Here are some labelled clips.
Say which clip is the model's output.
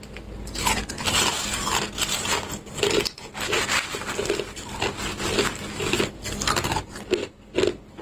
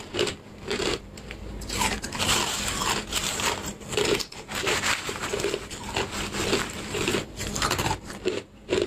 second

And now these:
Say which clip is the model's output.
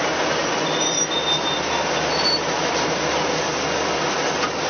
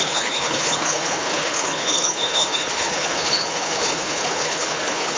second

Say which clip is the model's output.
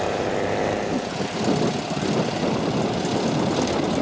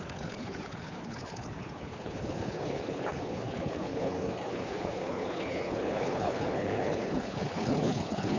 second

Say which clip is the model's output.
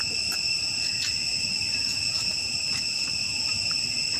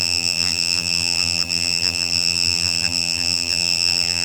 second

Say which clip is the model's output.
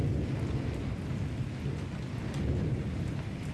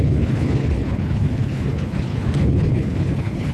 second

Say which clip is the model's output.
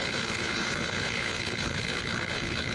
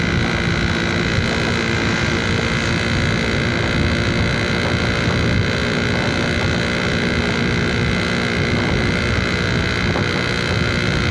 first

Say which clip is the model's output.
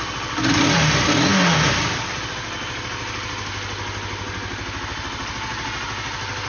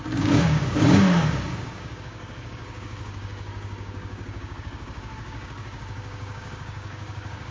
second